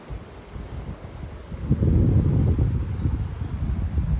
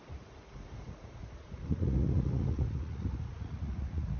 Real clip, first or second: first